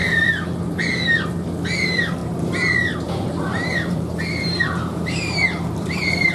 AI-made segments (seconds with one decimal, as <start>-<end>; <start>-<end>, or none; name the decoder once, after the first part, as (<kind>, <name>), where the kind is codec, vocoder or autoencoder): 2.2-6.3 (vocoder, BigVGAN v2)